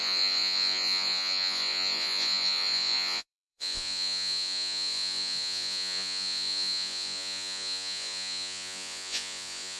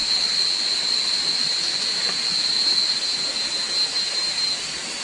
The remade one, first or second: first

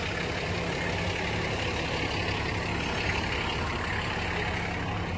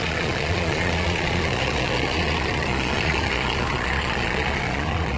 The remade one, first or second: second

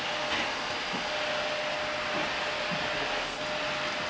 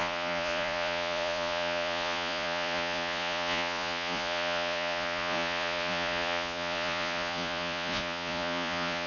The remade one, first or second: second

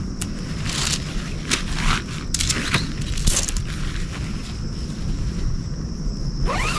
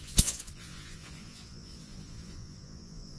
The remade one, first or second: second